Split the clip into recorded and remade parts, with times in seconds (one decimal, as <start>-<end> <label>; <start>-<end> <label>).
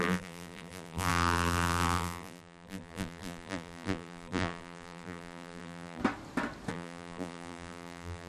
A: 0.0-6.0 remade; 6.0-6.7 recorded; 6.7-8.3 remade